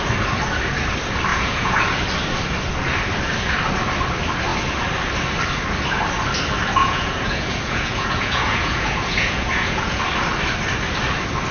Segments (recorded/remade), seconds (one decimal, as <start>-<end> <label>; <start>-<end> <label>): 0.0-1.3 recorded; 1.3-1.8 remade; 1.8-6.8 recorded; 6.8-10.0 remade; 10.0-11.5 recorded